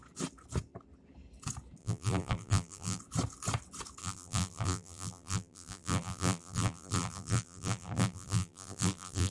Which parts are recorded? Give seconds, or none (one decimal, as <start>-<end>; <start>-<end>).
0.0-1.8; 3.0-4.0